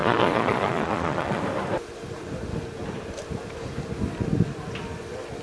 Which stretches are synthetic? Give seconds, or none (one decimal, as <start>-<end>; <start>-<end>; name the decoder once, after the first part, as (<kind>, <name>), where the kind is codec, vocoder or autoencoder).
0.0-1.4 (vocoder, Vocos)